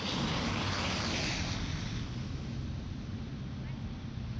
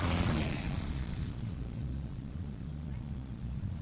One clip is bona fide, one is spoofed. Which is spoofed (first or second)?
second